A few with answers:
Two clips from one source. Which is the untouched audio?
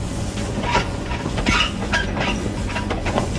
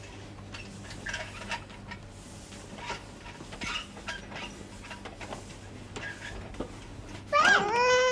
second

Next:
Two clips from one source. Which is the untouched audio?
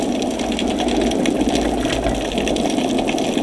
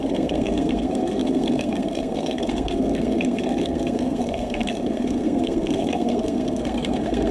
first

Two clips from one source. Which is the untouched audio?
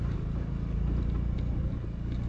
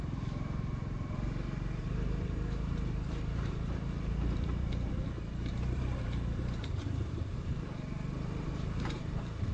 first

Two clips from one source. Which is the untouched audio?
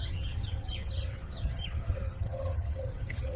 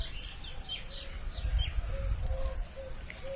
second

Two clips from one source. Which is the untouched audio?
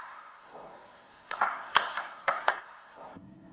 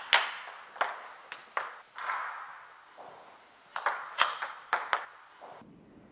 second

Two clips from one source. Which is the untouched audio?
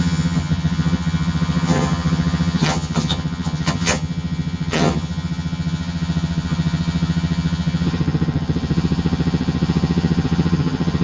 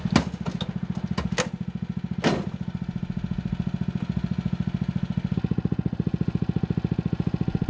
second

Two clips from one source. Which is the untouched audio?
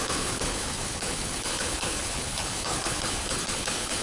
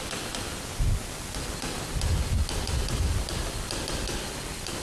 second